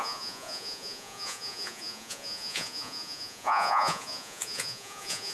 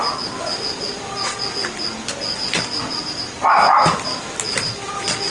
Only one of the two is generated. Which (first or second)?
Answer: first